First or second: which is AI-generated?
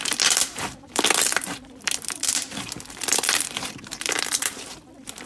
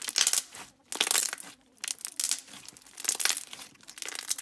first